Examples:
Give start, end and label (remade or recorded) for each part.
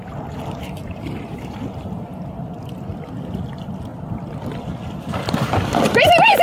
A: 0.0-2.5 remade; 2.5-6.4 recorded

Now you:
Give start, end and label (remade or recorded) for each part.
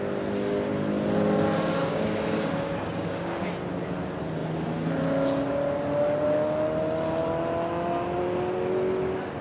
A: 0.0-1.8 recorded; 1.8-3.4 remade; 3.4-9.4 recorded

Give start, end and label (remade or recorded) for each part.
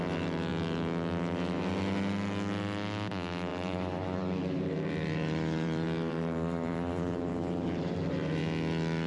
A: 0.0-3.5 recorded; 3.5-8.4 remade; 8.4-9.1 recorded